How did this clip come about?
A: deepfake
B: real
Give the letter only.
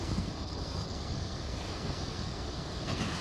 A